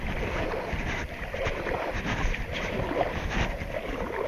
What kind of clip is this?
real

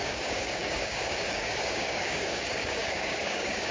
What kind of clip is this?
fake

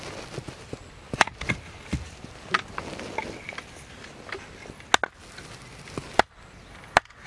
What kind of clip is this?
real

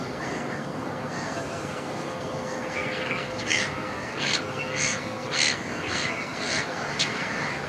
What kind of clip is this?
fake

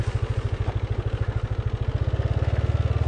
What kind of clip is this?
real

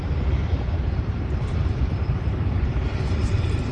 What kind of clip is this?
fake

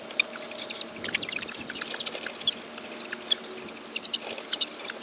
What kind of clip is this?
real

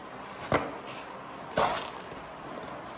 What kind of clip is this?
real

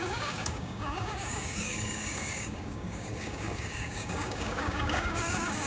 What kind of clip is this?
fake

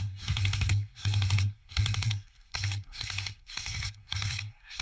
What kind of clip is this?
fake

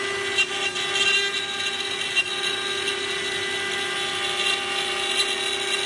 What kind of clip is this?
real